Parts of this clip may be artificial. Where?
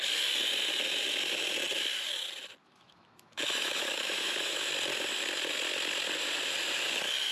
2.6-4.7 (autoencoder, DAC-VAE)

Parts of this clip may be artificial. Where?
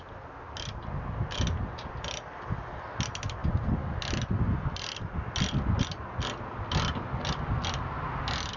none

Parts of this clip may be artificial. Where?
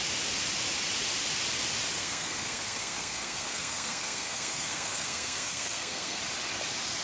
2.0-6.2 (codec, SNAC)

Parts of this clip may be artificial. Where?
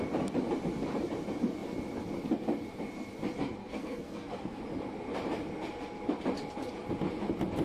3.6-4.6 (codec, SNAC)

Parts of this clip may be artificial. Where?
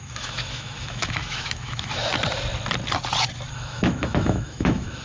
0.0-2.1 (autoencoder, DAC-VAE); 3.5-5.0